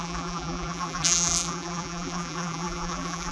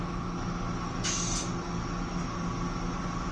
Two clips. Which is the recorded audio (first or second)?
second